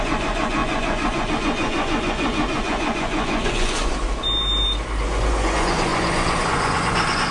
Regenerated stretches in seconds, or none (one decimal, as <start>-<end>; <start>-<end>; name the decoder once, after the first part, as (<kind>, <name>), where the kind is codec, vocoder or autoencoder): 0.0-4.0 (vocoder, Vocos); 5.0-7.3